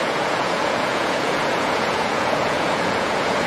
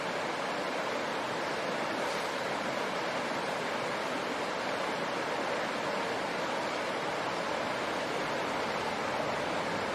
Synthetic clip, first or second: first